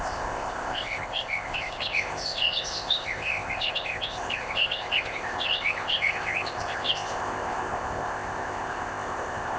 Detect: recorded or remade remade